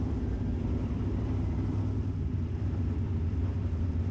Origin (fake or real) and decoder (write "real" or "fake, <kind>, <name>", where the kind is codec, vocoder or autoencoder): fake, vocoder, BigVGAN v2